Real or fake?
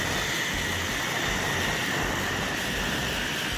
real